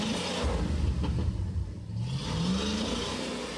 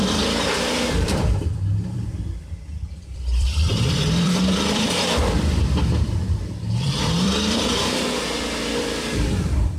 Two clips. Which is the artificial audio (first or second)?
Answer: second